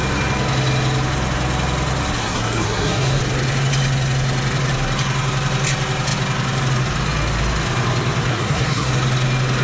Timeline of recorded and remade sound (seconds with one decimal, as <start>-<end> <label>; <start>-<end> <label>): 0.0-2.2 recorded; 2.2-3.2 remade; 3.2-8.3 recorded; 8.3-8.9 remade; 8.9-9.6 recorded